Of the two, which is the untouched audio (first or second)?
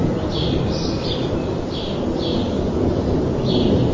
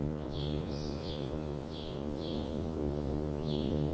first